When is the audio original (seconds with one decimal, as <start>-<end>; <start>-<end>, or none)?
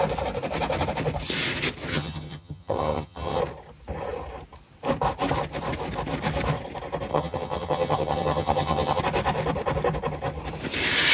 0.0-1.9; 3.4-7.1; 9.0-11.1